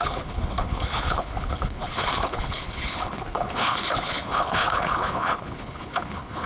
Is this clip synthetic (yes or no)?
yes